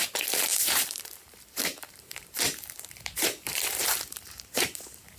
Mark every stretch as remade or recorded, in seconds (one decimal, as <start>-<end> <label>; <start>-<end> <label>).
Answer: 0.0-5.2 remade